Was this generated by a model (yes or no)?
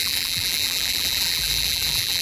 yes